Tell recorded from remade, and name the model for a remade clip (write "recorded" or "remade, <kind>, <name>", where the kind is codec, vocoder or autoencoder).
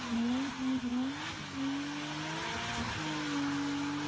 recorded